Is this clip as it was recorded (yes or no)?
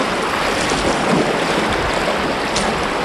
yes